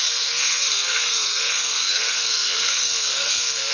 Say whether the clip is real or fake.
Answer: fake